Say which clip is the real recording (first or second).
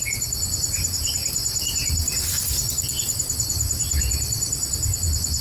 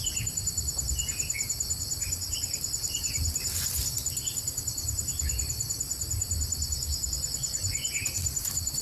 first